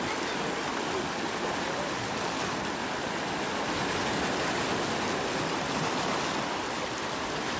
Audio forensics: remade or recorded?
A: recorded